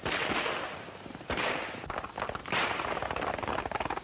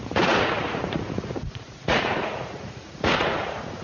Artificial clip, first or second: second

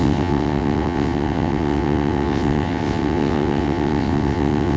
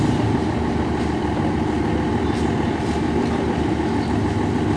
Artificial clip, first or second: first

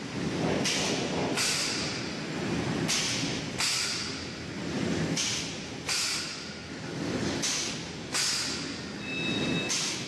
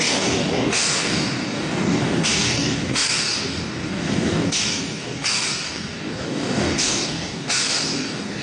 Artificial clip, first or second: second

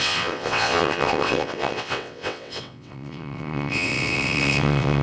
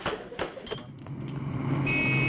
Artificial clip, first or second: first